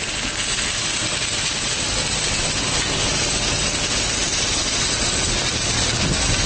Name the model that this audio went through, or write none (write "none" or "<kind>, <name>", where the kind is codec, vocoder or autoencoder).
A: none